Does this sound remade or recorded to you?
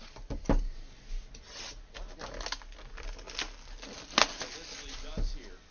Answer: recorded